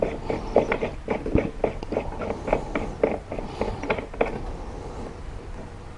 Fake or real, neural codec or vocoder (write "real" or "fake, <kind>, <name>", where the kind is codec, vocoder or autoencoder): real